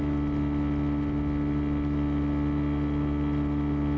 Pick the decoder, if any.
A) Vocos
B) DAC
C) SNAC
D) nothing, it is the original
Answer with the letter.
D